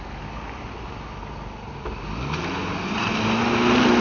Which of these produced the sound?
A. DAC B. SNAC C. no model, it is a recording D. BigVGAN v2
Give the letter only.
C